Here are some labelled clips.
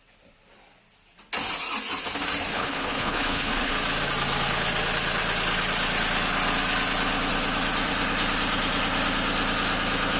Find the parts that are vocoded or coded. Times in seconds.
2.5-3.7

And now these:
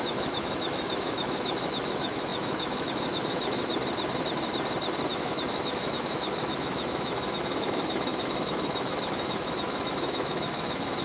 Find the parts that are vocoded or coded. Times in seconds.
0.0-3.7; 5.1-11.0

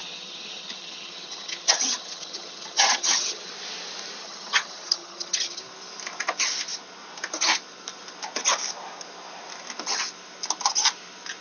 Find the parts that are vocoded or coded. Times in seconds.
0.0-3.5; 4.2-5.6

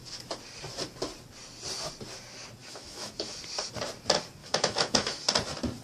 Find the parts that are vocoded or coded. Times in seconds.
2.6-3.4; 4.4-5.2

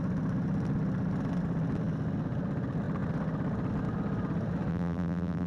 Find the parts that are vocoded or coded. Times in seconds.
4.7-5.5

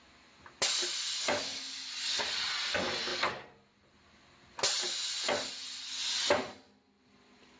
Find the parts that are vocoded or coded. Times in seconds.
1.5-2.2

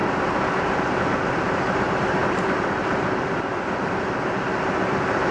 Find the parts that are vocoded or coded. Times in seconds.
none